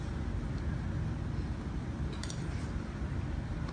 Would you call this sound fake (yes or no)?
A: no